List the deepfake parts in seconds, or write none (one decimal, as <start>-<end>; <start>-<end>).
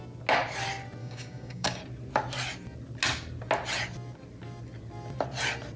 1.0-1.8